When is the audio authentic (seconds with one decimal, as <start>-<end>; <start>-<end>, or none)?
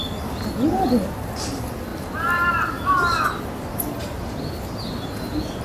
0.0-5.6